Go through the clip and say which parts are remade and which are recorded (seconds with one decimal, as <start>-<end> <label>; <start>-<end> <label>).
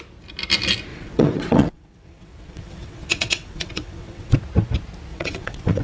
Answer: 0.0-0.9 recorded; 0.9-4.4 remade; 4.4-5.1 recorded; 5.1-5.8 remade